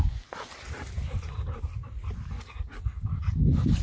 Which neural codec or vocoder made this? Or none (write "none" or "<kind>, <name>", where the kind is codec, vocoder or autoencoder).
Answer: none